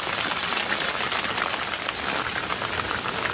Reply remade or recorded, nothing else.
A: recorded